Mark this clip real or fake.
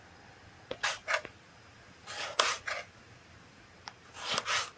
real